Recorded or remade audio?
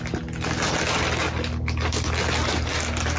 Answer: recorded